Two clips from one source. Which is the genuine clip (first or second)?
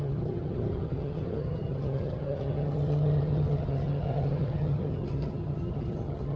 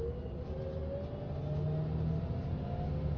second